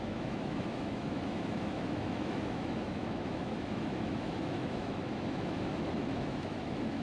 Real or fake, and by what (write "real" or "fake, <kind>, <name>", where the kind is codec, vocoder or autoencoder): fake, autoencoder, DAC-VAE